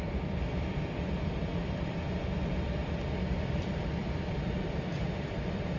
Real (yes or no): no